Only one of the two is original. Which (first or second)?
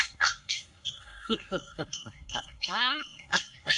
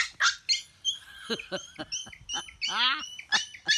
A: second